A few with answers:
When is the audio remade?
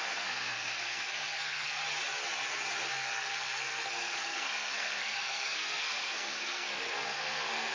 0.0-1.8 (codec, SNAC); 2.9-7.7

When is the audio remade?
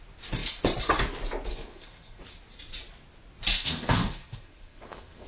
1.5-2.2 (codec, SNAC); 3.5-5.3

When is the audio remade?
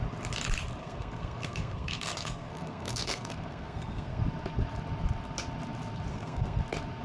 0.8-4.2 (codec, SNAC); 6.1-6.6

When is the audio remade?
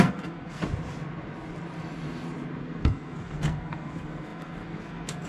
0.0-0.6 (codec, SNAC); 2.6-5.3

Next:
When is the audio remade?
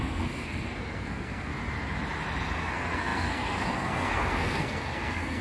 0.0-1.5 (codec, SNAC); 2.6-5.4